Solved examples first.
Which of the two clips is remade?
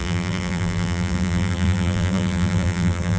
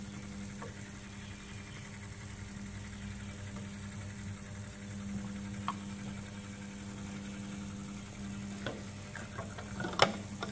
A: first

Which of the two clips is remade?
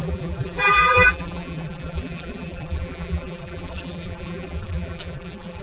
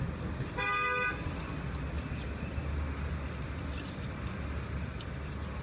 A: first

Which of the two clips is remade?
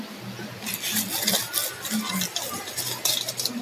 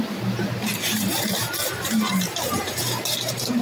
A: second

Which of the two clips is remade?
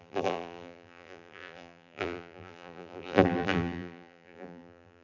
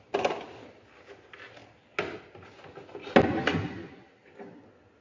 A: first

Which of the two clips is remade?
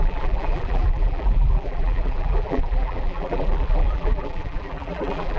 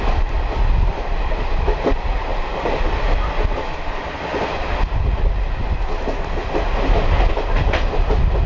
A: first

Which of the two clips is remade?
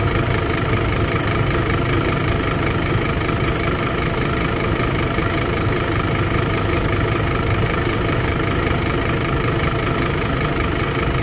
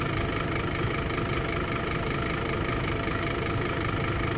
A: first